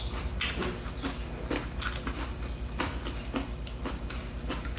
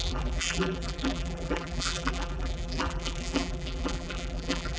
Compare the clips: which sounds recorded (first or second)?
first